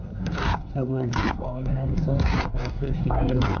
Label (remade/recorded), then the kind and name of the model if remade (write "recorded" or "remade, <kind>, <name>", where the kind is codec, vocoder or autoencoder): remade, codec, SNAC